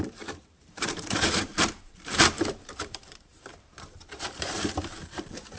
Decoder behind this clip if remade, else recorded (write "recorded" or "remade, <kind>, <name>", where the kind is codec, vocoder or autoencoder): remade, vocoder, BigVGAN v2